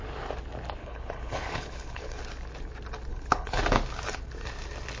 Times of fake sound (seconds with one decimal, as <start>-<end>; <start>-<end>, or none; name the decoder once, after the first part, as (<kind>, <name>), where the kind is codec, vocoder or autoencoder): 0.8-2.2 (codec, HILCodec); 3.1-3.6

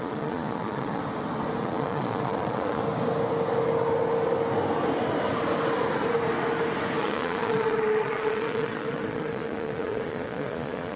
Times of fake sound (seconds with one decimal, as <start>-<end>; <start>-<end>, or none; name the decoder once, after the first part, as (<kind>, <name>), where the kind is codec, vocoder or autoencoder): 0.0-1.0 (vocoder, Vocos); 1.6-2.8; 7.0-11.0

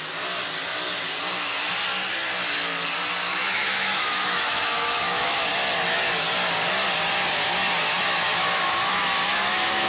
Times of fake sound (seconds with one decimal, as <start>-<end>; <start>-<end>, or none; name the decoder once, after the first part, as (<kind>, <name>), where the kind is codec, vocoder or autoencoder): 3.2-5.5 (autoencoder, DAC-VAE); 8.3-9.9

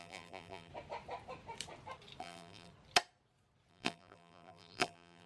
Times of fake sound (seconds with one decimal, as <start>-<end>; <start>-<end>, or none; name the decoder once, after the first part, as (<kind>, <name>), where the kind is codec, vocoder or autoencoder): 0.0-0.7 (vocoder, BigVGAN v2); 2.2-2.7; 3.7-5.3

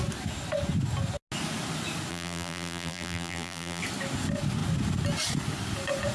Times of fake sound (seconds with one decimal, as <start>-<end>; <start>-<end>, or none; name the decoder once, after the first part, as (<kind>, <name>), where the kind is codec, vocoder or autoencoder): 2.1-3.8 (vocoder, BigVGAN v2)

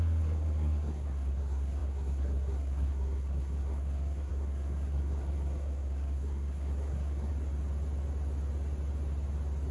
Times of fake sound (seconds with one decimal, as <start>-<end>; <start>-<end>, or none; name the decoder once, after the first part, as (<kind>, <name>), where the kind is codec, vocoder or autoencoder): 0.0-7.3 (codec, SNAC)

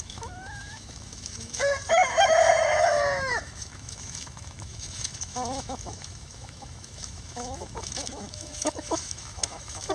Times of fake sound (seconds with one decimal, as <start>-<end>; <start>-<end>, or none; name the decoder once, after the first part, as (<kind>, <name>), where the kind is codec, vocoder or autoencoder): 0.0-9.9 (autoencoder, DAC-VAE)

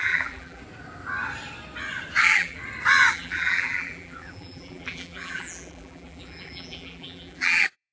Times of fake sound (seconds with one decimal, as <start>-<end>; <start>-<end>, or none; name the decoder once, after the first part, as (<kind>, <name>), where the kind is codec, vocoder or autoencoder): 0.0-0.6 (vocoder, BigVGAN v2); 2.2-2.6; 3.1-7.9